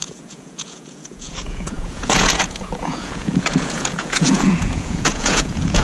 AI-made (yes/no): yes